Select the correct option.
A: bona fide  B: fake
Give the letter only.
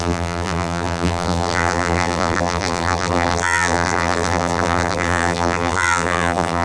B